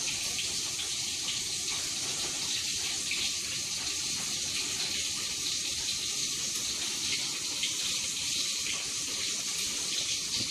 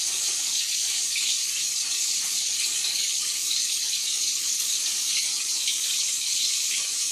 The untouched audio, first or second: first